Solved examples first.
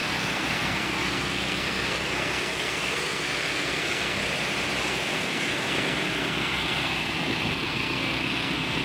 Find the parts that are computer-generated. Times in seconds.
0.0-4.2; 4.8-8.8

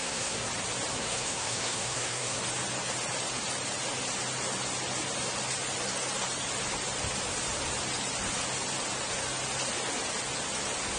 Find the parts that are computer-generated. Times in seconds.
0.0-0.5; 0.9-2.4

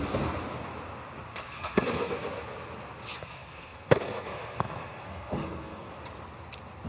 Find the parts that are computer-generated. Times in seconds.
1.3-2.1; 3.2-5.9

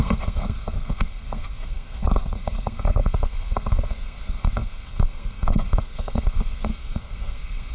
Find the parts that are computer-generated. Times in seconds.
0.0-7.7

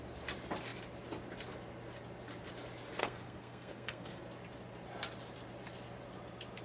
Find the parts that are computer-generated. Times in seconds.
3.0-4.2